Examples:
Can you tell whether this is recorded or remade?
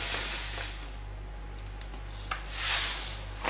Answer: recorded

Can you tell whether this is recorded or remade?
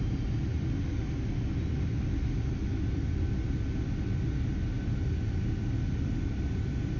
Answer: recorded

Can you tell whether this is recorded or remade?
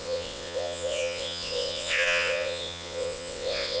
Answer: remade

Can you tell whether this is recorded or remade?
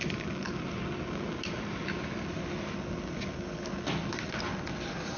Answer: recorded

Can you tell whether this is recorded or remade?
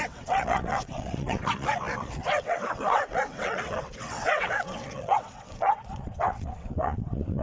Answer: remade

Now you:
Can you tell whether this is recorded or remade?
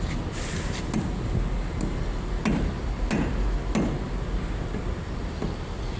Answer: recorded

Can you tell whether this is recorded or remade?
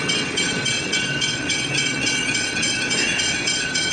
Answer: remade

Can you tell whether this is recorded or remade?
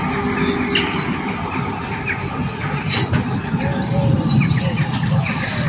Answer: recorded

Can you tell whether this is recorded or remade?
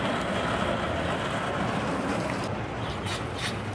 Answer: recorded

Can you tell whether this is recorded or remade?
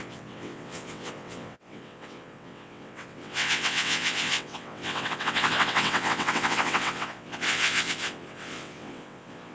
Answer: remade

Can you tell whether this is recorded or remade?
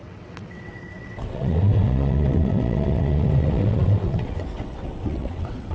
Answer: remade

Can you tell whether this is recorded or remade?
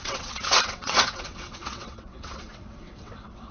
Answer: remade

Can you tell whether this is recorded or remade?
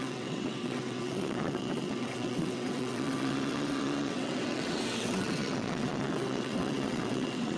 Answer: remade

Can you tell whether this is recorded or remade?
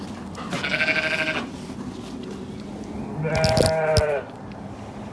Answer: recorded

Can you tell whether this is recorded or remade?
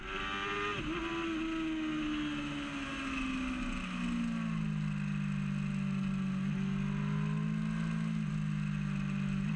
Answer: recorded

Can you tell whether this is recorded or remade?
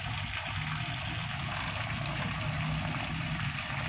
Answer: recorded